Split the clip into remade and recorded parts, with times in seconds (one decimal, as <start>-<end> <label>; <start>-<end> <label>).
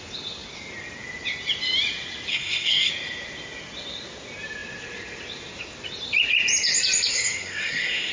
0.0-2.3 recorded; 2.3-2.9 remade; 2.9-7.1 recorded; 7.1-8.1 remade